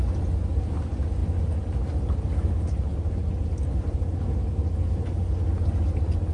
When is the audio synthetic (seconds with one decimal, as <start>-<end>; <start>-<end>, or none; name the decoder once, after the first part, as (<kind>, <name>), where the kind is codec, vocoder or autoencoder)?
none